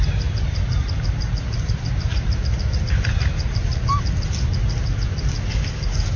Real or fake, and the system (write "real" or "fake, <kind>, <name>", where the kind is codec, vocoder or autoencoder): real